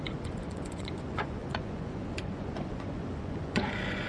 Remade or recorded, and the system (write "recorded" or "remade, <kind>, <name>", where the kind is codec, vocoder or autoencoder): remade, vocoder, Vocos